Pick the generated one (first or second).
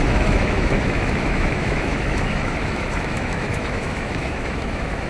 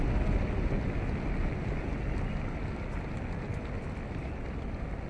first